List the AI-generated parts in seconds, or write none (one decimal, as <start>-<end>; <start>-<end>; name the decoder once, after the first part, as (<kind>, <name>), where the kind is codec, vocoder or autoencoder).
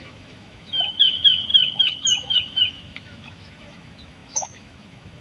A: 0.0-5.2 (autoencoder, DAC-VAE)